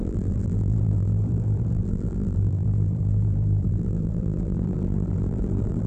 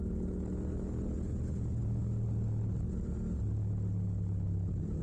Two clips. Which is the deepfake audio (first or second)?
first